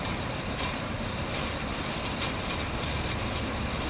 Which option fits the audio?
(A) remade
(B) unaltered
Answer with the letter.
B